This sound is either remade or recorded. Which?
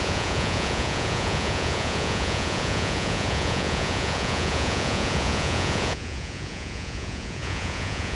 remade